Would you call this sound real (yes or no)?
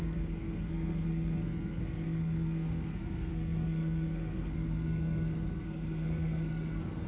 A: no